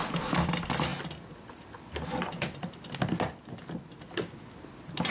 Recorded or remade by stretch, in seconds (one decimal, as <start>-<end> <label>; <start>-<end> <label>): 0.0-5.1 recorded